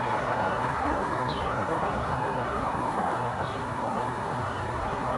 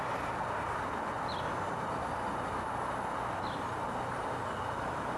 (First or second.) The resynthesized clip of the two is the first